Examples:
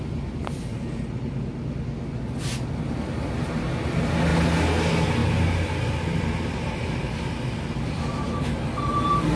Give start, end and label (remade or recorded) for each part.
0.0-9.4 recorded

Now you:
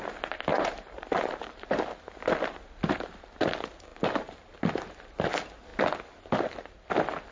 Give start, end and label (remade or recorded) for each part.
0.0-0.5 recorded; 0.5-1.7 remade; 1.7-3.9 recorded; 3.9-5.3 remade; 5.3-7.3 recorded

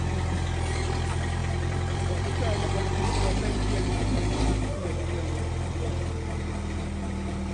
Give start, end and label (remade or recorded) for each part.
0.0-1.4 recorded; 1.4-5.9 remade; 5.9-7.5 recorded

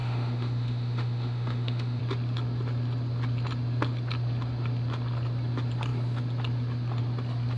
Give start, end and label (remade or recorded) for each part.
0.0-2.0 remade; 2.0-7.6 recorded

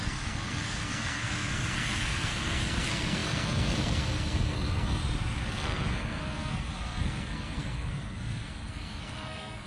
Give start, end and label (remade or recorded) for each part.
0.0-5.0 remade; 5.0-5.5 recorded; 5.5-9.7 remade

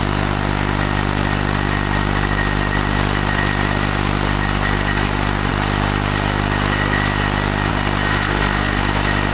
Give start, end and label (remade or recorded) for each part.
0.0-8.1 recorded; 8.1-8.8 remade; 8.8-9.3 recorded

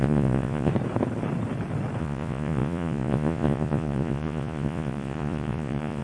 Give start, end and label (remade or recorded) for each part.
0.0-0.7 remade; 0.7-2.0 recorded; 2.0-6.0 remade

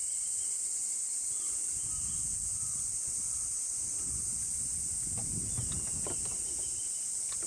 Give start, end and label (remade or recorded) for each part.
0.0-7.5 recorded